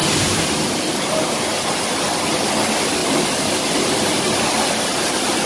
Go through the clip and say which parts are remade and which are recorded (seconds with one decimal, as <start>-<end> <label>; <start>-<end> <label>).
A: 0.0-3.0 recorded; 3.0-3.6 remade; 3.6-5.5 recorded